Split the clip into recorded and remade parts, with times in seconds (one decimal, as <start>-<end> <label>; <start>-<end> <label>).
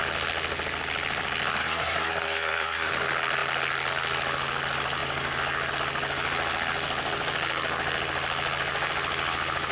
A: 0.0-1.6 recorded; 1.6-2.9 remade; 2.9-9.7 recorded